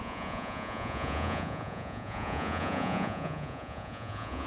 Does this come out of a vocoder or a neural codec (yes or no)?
yes